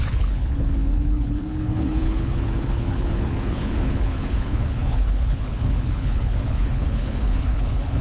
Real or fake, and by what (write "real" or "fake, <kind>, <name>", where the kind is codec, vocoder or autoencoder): fake, codec, HILCodec